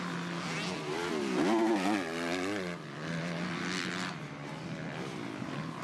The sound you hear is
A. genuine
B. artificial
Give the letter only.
A